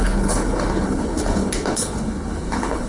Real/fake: fake